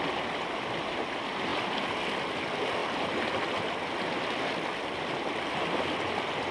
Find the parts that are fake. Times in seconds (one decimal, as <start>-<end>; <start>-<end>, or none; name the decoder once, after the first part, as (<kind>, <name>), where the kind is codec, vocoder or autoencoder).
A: none